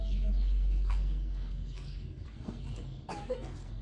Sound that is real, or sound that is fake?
fake